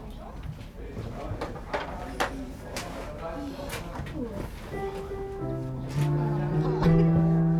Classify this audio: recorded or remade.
recorded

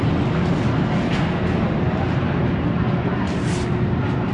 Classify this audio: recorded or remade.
recorded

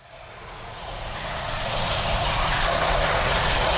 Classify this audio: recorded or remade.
remade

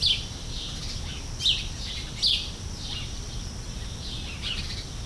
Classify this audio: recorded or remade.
recorded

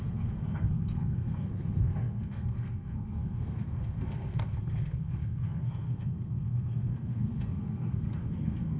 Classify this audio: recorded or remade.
remade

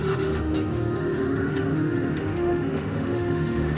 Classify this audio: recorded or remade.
remade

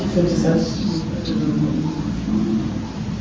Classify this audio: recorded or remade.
recorded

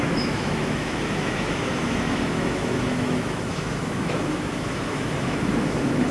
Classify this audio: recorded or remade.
remade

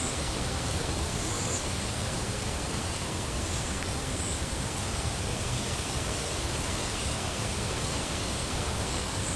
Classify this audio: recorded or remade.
remade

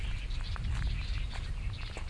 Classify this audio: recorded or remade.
recorded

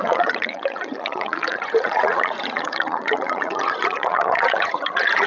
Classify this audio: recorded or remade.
remade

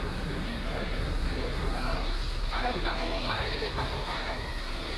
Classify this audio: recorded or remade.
remade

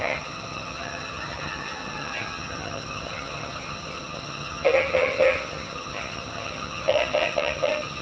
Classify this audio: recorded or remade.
remade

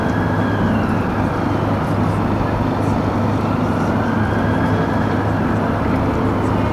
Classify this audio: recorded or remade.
recorded